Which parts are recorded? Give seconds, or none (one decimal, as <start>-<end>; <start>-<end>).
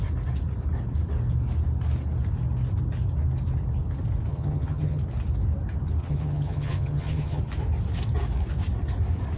0.0-4.3; 5.0-6.0; 7.4-9.4